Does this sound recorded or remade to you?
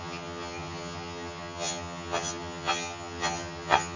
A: remade